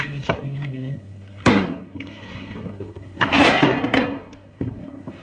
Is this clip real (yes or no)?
no